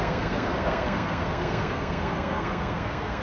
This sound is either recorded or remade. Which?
remade